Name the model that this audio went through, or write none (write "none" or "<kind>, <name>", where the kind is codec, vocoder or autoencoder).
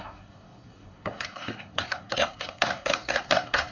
codec, SNAC